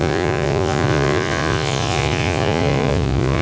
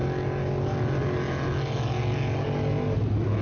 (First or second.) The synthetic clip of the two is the first